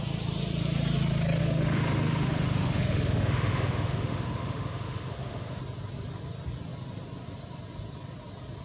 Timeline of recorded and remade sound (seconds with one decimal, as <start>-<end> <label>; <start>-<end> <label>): 0.0-1.4 recorded; 1.4-5.6 remade; 5.6-8.6 recorded